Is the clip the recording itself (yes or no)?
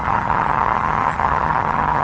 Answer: no